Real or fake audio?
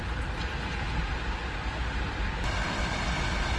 real